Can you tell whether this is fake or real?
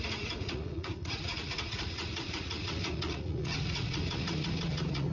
fake